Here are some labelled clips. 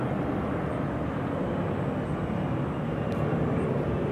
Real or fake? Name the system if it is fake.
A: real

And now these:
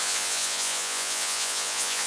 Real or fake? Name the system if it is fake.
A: fake, vocoder, Vocos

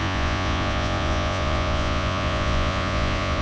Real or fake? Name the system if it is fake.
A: fake, vocoder, Vocos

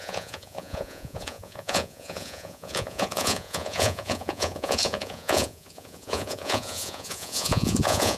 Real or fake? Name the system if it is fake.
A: fake, vocoder, Vocos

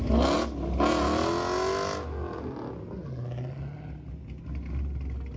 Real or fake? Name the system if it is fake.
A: real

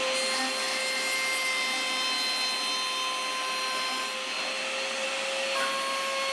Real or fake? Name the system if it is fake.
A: real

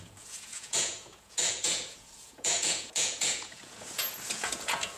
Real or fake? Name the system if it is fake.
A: fake, vocoder, Vocos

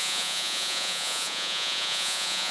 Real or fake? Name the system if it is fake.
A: fake, vocoder, Vocos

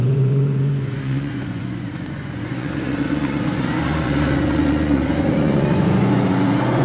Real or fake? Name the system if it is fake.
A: fake, vocoder, Vocos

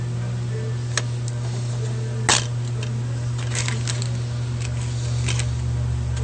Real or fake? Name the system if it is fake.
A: real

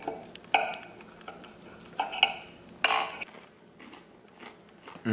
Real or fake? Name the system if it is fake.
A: real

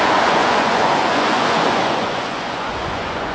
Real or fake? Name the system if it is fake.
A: fake, vocoder, Vocos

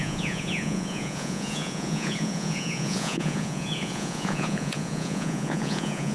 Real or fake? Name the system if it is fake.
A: fake, vocoder, Vocos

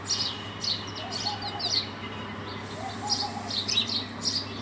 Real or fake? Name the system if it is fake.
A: real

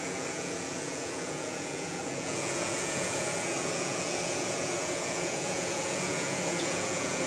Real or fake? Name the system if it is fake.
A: fake, vocoder, Vocos